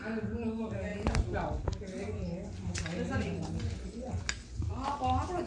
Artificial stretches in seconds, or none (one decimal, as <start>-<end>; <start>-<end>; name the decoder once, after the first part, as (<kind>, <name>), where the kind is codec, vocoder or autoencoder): none